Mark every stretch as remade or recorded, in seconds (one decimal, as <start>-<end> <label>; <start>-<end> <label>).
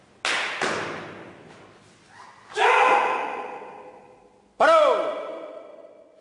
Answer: 0.0-6.2 recorded